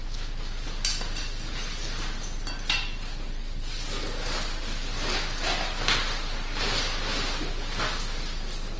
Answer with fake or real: real